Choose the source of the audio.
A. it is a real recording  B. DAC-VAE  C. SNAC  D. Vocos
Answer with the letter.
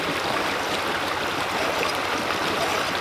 A